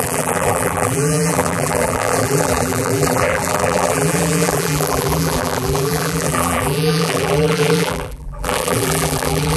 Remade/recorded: remade